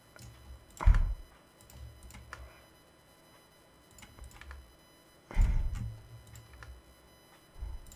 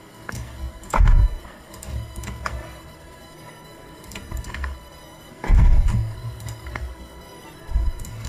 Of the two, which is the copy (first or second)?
second